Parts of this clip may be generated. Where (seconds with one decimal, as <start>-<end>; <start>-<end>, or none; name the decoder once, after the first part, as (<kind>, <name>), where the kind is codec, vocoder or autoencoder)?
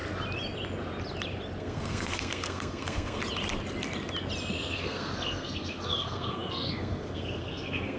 1.6-3.2 (codec, SNAC); 4.5-8.0